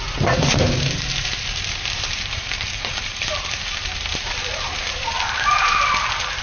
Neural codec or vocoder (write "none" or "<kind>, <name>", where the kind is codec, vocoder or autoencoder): vocoder, BigVGAN v2